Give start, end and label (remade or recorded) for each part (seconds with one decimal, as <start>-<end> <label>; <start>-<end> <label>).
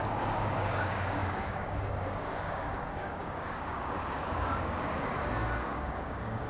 0.0-6.5 remade